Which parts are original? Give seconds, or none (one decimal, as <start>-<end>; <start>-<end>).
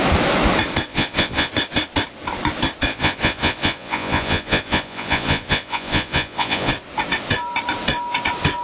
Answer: 0.0-0.9; 1.5-2.9; 6.7-8.6